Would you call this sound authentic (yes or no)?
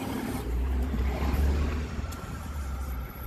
no